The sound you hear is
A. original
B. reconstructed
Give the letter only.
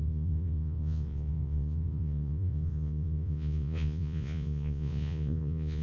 B